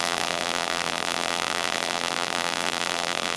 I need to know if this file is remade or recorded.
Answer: remade